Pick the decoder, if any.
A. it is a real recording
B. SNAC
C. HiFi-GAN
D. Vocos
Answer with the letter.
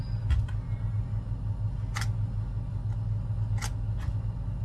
A